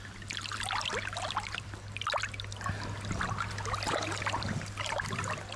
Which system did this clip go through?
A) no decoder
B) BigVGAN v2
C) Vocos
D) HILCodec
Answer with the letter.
A